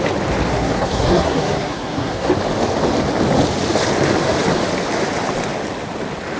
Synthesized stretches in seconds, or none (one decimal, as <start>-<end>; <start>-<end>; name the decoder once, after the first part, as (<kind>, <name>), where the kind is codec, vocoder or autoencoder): 0.5-2.3 (codec, SNAC)